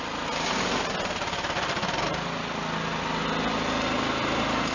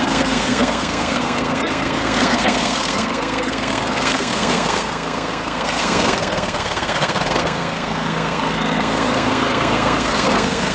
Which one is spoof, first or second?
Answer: second